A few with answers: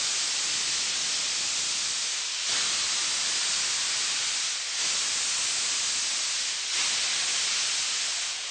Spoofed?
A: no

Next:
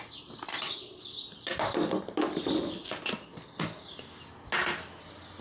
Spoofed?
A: no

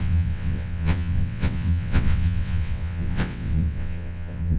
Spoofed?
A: yes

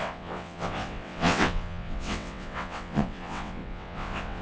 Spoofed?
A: yes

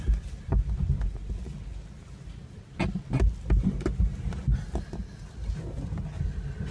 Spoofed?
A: no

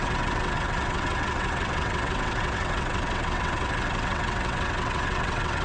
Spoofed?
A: yes